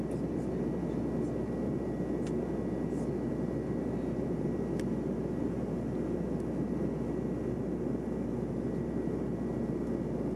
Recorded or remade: recorded